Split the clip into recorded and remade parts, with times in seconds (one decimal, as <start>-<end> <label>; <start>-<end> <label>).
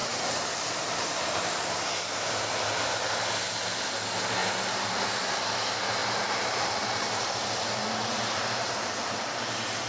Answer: 0.0-1.7 remade; 1.7-4.4 recorded; 4.4-5.0 remade; 5.0-6.0 recorded; 6.0-9.9 remade